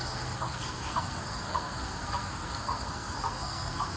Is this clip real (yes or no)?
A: no